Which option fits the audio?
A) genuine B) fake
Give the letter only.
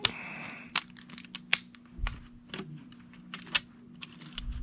A